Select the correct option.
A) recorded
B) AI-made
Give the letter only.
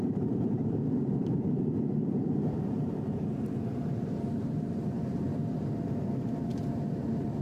B